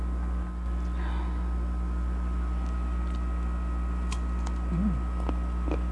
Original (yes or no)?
yes